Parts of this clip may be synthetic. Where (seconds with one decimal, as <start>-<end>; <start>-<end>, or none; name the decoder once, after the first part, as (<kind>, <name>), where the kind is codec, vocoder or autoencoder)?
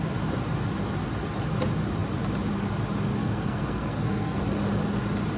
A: 3.2-4.4 (codec, SNAC)